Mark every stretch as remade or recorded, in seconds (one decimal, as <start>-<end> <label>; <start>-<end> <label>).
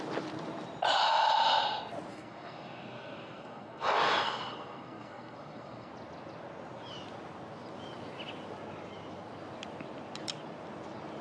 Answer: 0.0-2.1 recorded; 2.1-5.9 remade; 5.9-11.2 recorded